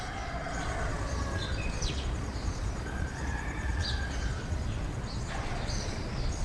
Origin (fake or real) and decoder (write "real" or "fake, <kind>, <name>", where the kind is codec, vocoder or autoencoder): fake, vocoder, Vocos